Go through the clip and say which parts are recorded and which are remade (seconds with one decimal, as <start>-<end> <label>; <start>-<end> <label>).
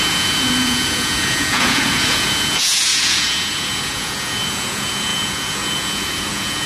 0.0-6.7 remade